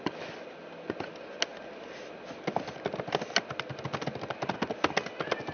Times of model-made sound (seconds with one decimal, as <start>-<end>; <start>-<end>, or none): none